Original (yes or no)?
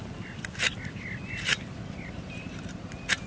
yes